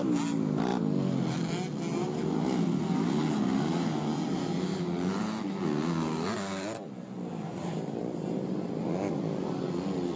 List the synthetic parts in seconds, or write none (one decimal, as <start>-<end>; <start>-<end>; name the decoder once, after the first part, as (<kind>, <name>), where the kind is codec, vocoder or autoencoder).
4.7-5.4 (vocoder, BigVGAN v2); 7.5-8.0